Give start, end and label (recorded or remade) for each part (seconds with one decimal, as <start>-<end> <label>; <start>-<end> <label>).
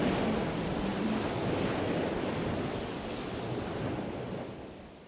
0.0-5.1 recorded